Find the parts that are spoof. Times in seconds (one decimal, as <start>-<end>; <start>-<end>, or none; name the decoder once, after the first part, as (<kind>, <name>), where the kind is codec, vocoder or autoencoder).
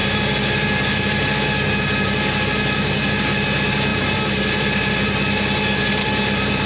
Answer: 3.9-4.9 (vocoder, BigVGAN v2)